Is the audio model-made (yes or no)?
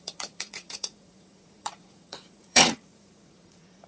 yes